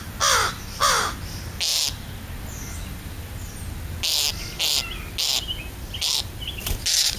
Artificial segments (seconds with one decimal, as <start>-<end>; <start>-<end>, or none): none